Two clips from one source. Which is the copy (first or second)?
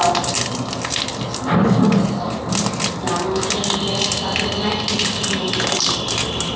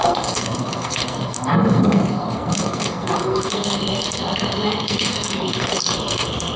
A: second